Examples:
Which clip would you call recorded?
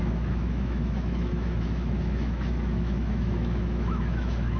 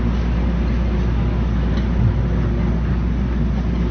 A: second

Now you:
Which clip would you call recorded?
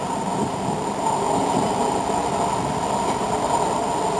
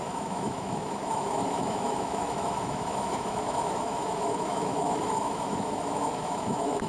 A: first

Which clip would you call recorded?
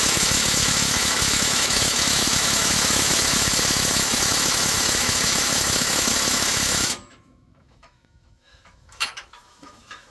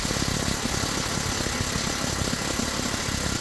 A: second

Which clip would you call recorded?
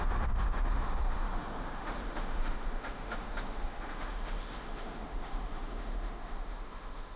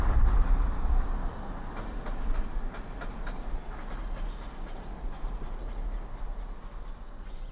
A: second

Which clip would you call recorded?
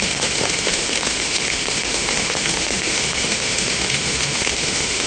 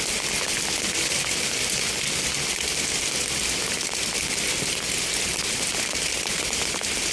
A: second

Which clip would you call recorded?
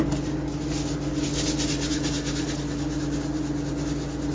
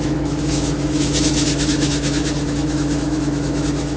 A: first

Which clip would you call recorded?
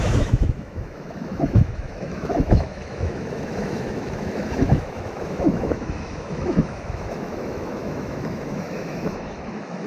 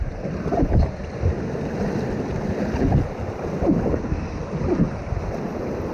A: second